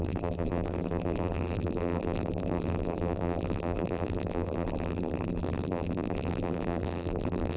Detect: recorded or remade remade